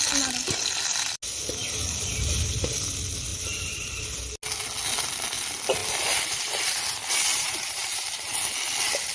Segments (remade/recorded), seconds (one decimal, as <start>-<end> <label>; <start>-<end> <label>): 0.0-3.3 recorded; 3.3-4.0 remade; 4.0-7.3 recorded; 7.3-8.3 remade; 8.3-9.1 recorded